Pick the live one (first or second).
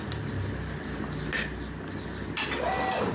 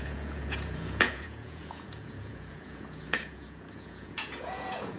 first